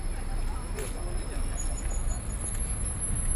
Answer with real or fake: real